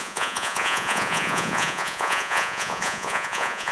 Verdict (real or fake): fake